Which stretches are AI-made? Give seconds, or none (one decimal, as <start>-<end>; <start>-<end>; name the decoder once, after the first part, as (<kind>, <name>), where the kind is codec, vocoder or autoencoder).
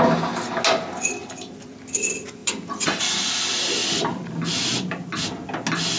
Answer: 1.2-1.8 (vocoder, BigVGAN v2); 2.4-3.0; 3.8-4.7